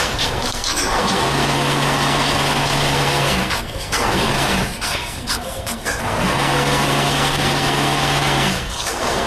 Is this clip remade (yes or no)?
yes